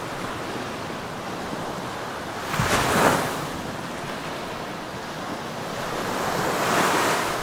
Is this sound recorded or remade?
recorded